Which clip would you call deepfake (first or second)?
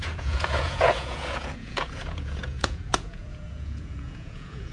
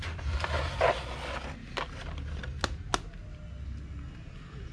first